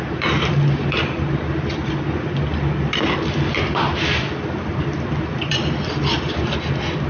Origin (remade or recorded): remade